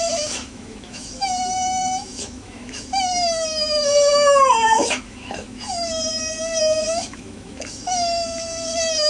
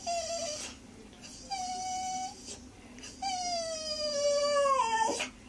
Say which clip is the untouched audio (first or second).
second